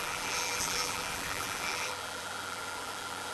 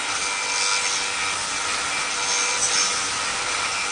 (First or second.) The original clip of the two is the second